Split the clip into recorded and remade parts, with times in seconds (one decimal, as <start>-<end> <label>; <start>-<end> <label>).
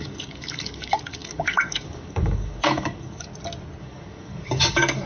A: 0.0-3.3 remade; 3.3-3.8 recorded; 3.8-5.1 remade